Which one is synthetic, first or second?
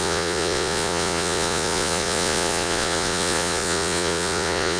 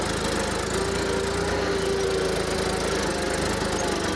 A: first